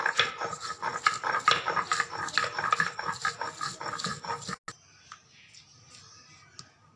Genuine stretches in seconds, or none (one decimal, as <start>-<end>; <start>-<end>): 0.0-7.0

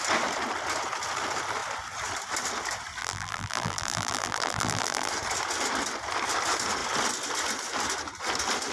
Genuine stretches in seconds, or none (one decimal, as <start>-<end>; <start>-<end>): 0.0-3.0; 5.1-8.7

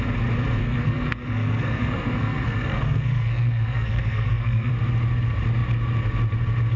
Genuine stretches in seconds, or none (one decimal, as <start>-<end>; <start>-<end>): 0.0-0.6; 4.7-6.8

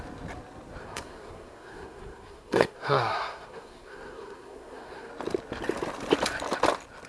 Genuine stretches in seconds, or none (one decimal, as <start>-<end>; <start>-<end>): 0.0-0.8; 5.1-7.1

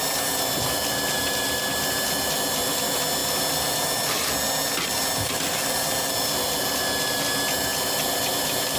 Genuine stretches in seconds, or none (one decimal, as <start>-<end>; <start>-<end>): 0.0-8.8

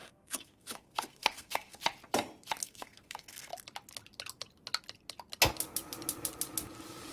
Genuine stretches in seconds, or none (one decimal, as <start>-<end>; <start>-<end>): 1.8-2.6; 3.5-7.1